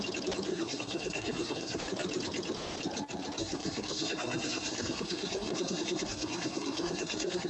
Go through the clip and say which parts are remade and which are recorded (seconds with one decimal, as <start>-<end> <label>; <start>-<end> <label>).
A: 0.0-0.5 recorded; 0.5-1.8 remade; 1.8-3.4 recorded; 3.4-7.5 remade